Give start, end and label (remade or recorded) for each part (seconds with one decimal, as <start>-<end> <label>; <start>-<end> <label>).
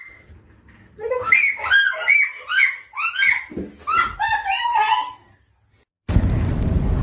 0.0-7.0 recorded